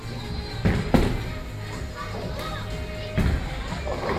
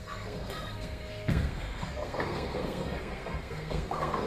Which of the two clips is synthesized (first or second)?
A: second